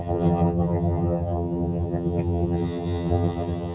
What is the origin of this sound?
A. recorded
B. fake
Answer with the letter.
B